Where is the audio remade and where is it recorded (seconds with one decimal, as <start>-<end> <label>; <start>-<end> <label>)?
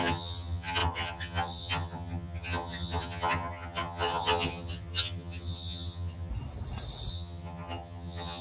0.0-6.3 remade; 6.3-7.1 recorded; 7.1-8.4 remade